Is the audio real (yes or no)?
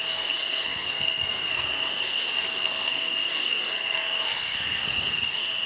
no